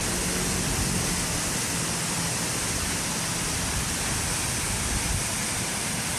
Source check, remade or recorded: recorded